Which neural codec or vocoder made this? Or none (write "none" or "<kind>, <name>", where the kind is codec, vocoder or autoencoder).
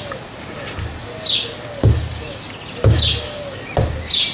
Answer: none